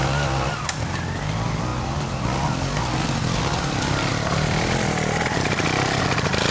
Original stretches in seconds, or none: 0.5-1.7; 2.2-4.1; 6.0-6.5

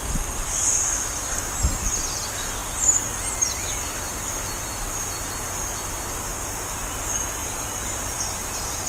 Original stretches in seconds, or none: 0.0-6.3; 6.8-7.4; 8.4-8.9

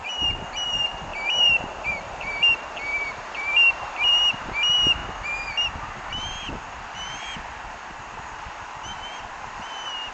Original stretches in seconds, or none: 0.0-1.1; 2.4-2.9; 4.5-10.1

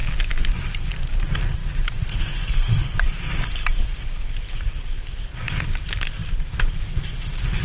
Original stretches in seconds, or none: 0.9-6.2; 7.0-7.6

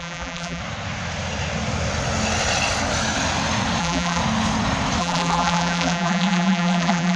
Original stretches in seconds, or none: 0.6-3.8; 4.2-5.0

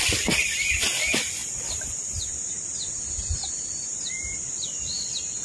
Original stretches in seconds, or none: none